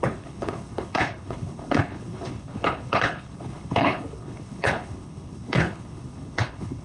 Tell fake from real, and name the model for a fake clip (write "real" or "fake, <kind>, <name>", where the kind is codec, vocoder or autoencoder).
fake, codec, HILCodec